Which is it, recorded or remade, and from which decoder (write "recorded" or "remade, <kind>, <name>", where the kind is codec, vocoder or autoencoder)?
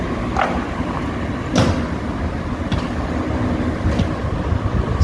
recorded